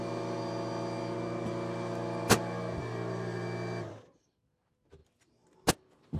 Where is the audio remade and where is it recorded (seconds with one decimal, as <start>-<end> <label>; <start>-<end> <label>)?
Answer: 0.0-6.2 recorded